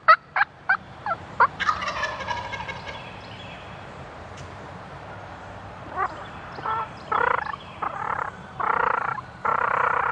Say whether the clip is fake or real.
fake